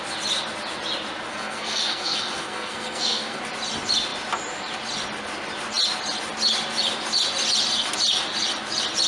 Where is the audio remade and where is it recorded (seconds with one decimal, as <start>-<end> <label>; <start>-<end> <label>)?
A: 0.0-1.3 recorded; 1.3-3.4 remade; 3.4-9.1 recorded